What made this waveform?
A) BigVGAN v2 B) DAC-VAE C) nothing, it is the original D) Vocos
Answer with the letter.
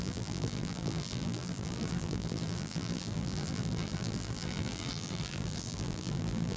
A